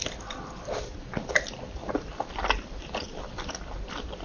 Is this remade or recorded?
remade